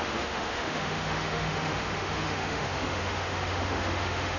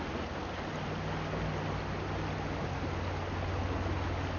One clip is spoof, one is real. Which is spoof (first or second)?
first